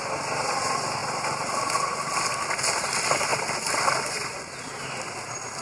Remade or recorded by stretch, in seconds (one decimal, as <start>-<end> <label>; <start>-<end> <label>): 0.0-5.6 recorded